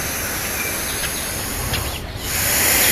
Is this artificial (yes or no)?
no